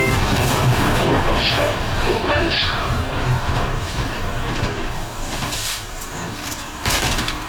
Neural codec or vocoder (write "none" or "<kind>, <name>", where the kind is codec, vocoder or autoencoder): codec, DAC